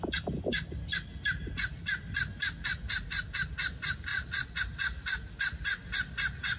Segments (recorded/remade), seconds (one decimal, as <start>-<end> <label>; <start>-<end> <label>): 0.0-4.1 recorded; 4.1-4.6 remade; 4.6-6.6 recorded